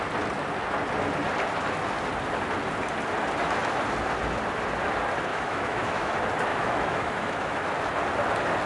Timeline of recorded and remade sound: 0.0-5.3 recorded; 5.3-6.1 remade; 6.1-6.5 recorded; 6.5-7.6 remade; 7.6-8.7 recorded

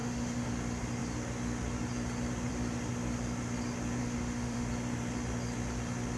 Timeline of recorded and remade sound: 0.0-0.5 remade; 0.5-4.0 recorded; 4.0-4.7 remade; 4.7-6.2 recorded

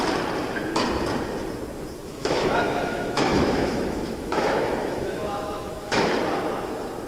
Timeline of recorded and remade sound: 0.0-2.1 recorded; 2.1-6.1 remade; 6.1-7.1 recorded

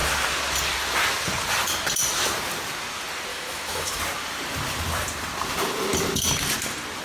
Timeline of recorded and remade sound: 0.0-3.3 recorded; 3.3-4.0 remade; 4.0-7.0 recorded

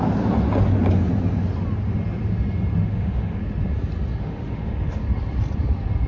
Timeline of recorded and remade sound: 0.0-2.9 recorded; 2.9-3.4 remade; 3.4-4.2 recorded; 4.2-5.0 remade; 5.0-6.1 recorded

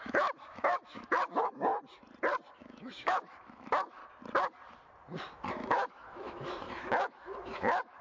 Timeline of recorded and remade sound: 0.0-1.7 remade; 1.7-2.5 recorded; 2.5-4.0 remade; 4.0-5.5 recorded; 5.5-8.0 remade

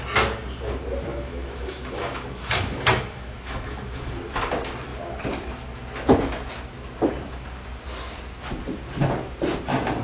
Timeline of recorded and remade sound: 0.0-1.1 recorded; 1.1-4.1 remade; 4.1-10.0 recorded

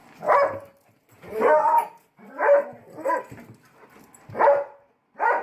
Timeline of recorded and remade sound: 0.0-5.4 recorded